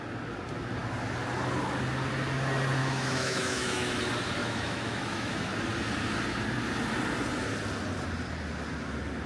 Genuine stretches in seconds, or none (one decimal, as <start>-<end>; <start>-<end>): 0.0-2.8; 4.0-4.4; 5.5-9.3